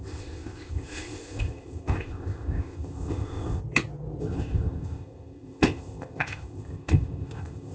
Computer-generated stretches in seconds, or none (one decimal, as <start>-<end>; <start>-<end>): 0.0-3.6; 4.2-7.7

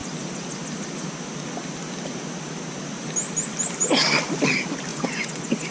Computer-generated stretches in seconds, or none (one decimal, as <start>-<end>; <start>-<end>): 4.9-5.7